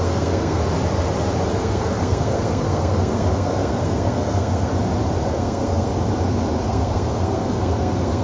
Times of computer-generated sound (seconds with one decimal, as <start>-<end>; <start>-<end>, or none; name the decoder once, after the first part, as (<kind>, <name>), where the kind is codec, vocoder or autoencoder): 0.0-0.6 (codec, SNAC); 1.5-4.7; 5.2-5.9; 6.6-8.2